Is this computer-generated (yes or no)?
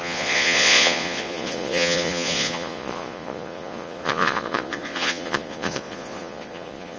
yes